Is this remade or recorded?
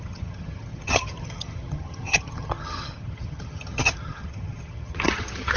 remade